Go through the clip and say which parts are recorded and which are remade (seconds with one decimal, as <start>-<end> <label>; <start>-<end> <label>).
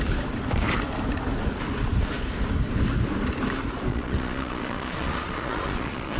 0.0-3.9 recorded; 3.9-6.2 remade